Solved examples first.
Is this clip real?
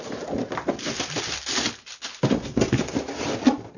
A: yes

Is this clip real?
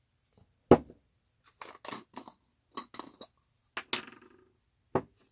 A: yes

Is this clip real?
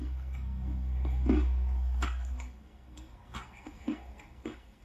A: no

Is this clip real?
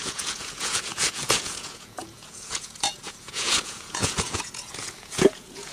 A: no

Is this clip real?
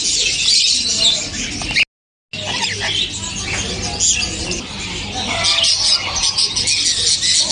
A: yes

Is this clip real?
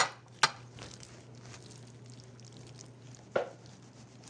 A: yes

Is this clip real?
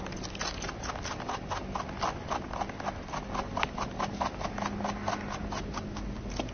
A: yes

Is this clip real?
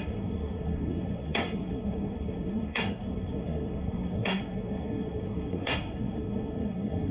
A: no